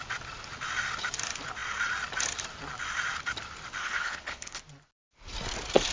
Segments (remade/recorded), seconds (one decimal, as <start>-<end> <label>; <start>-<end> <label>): 0.0-3.8 recorded; 3.8-4.6 remade; 4.6-5.9 recorded